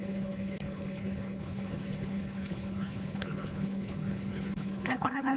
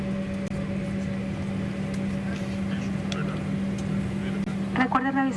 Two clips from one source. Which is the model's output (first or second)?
first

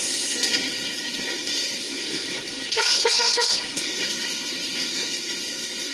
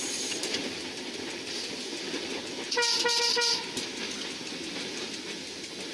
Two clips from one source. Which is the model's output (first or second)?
first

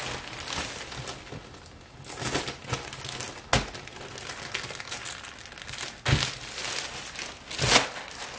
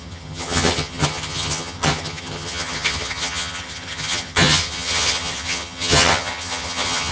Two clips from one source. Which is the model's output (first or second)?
second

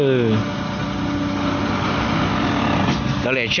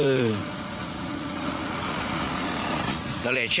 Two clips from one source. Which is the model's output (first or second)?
second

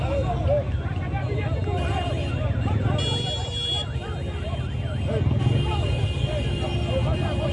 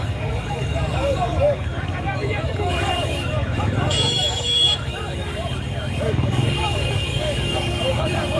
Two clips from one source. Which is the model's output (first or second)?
second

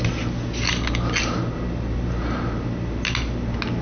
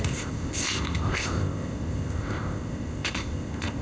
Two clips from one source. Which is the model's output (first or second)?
second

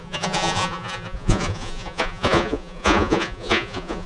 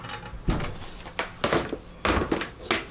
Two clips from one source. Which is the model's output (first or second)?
first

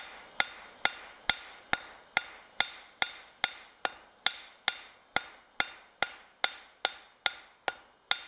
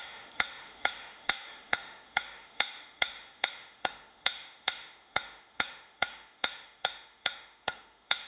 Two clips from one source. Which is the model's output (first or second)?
second